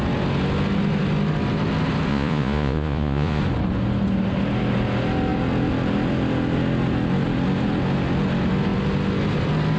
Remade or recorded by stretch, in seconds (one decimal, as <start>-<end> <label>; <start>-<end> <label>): 0.0-2.1 recorded; 2.1-3.4 remade; 3.4-9.8 recorded